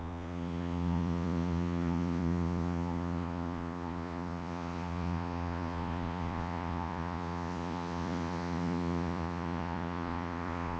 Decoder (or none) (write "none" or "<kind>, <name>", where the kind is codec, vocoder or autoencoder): vocoder, Vocos